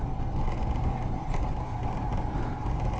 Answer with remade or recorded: recorded